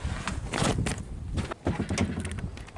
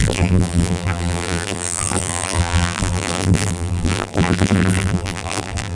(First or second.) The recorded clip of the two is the first